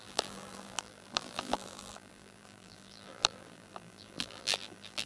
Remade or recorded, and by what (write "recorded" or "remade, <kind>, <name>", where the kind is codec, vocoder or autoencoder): remade, vocoder, BigVGAN v2